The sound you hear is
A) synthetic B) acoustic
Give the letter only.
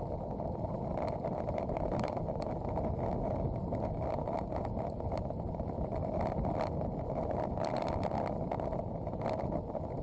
B